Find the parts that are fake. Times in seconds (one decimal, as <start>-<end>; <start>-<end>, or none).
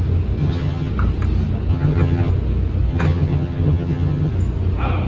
0.4-0.9; 1.7-2.3; 2.9-4.3